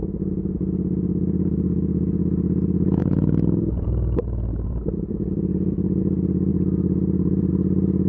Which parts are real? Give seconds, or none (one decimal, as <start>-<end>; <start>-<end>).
0.0-3.0; 6.0-6.5; 7.5-8.1